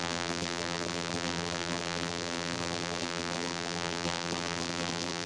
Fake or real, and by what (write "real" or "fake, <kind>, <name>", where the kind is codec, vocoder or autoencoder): fake, vocoder, BigVGAN v2